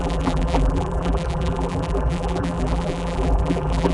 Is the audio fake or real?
fake